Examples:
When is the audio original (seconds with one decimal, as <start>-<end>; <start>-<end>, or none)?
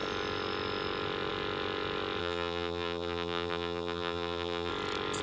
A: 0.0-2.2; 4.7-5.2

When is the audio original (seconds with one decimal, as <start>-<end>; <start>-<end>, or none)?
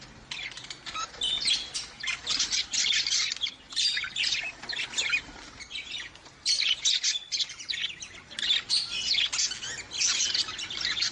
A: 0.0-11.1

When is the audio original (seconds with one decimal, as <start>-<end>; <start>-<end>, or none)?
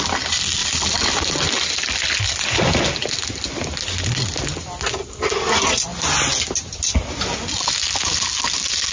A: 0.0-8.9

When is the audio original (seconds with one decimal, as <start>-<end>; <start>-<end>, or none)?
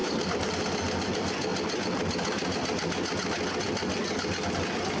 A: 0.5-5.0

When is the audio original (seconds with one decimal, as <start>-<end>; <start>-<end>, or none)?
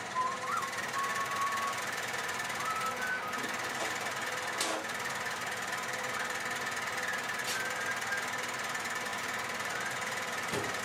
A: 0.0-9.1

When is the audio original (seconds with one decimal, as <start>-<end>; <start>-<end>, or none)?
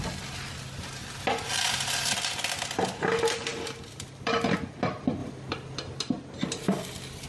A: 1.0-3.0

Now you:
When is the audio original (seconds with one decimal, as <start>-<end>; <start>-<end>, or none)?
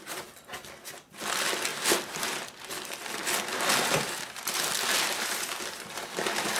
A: 0.0-6.6